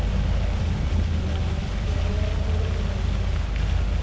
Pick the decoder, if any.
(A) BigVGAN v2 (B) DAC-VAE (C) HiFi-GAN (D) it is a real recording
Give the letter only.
D